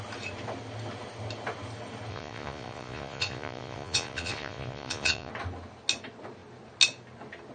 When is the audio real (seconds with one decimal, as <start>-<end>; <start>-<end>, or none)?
0.0-2.1; 5.3-7.5